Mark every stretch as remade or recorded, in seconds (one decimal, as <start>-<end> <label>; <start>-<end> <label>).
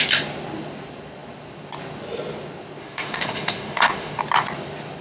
0.0-2.8 recorded; 2.8-4.2 remade; 4.2-5.0 recorded